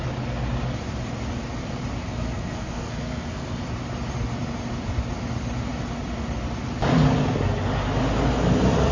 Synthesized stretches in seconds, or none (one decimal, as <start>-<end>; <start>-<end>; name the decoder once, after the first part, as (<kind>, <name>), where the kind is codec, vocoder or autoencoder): 2.0-3.6 (codec, SNAC)